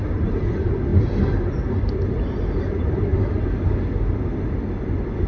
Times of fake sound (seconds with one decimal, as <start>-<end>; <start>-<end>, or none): none